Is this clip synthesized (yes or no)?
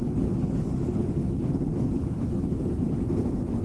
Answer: yes